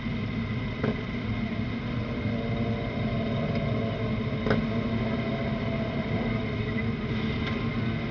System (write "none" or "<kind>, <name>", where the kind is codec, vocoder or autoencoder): none